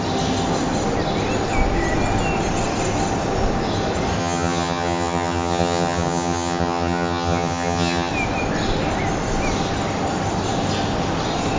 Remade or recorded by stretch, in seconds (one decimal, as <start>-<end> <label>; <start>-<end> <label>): 0.0-4.2 recorded; 4.2-8.1 remade; 8.1-11.6 recorded